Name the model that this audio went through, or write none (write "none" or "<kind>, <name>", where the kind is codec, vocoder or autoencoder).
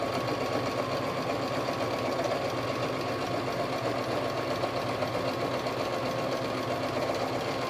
none